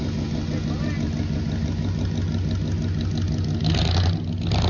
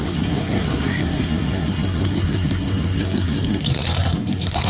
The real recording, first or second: first